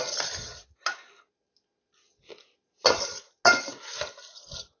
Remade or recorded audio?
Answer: recorded